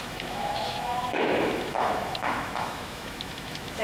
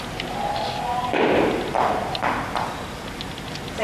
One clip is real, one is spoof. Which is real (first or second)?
second